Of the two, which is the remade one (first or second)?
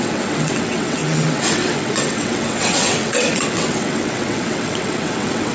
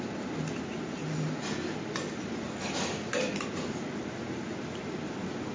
first